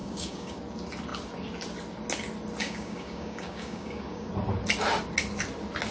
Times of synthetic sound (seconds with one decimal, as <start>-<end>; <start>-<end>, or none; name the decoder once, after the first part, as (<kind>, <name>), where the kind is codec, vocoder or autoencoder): 0.0-0.6 (codec, DAC); 2.6-4.3